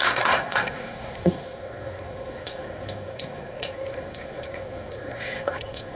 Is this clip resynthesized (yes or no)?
yes